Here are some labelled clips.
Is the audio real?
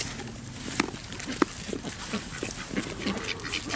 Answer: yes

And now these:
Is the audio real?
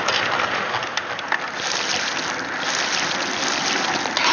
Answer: yes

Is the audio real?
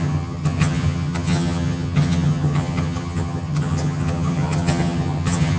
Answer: no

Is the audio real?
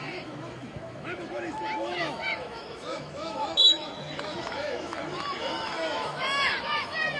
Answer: no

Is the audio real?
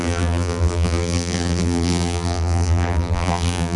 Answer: no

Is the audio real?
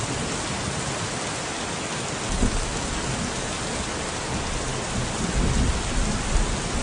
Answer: yes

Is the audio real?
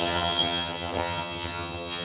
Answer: no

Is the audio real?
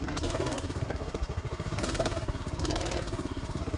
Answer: no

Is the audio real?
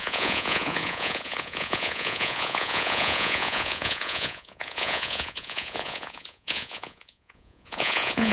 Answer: no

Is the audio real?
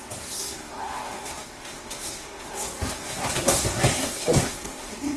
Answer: no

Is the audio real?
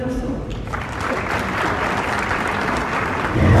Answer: no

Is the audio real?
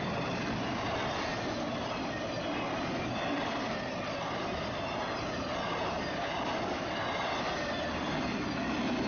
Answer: yes